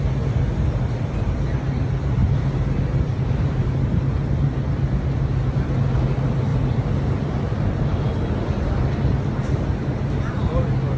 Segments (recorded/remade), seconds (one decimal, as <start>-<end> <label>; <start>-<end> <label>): 0.0-2.2 recorded; 2.2-3.7 remade; 3.7-6.5 recorded; 6.5-8.1 remade; 8.1-11.0 recorded